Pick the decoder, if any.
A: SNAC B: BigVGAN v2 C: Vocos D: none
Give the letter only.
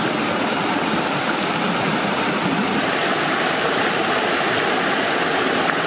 B